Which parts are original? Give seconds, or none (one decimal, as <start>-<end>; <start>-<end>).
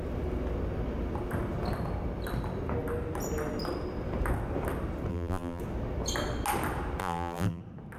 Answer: 0.0-5.1; 5.6-7.0; 7.6-8.0